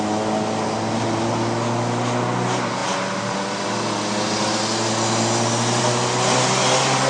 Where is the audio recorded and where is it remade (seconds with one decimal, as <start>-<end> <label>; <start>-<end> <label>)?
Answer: 0.0-7.1 recorded